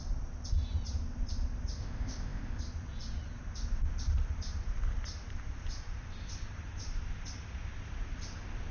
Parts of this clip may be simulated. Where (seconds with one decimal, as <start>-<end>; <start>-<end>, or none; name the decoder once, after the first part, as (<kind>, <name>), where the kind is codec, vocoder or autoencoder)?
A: 1.8-2.6 (codec, ZipCodec)